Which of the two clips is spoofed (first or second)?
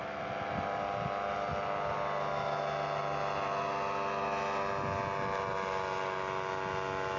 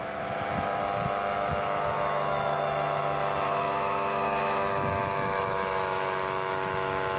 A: second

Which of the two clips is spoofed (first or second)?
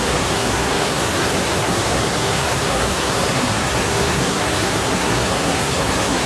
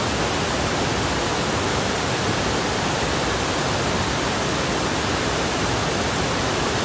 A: first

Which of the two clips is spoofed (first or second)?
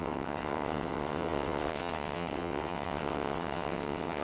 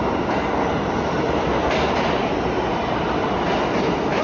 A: first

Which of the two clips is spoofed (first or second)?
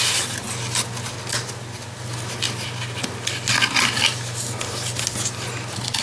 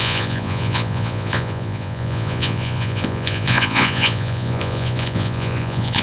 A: second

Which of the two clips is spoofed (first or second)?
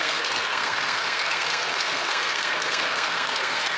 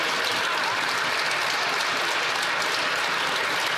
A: first